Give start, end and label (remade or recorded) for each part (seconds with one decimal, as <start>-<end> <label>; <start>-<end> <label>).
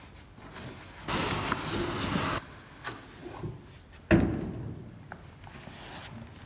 0.0-6.5 recorded